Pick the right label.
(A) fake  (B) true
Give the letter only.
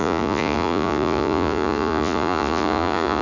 A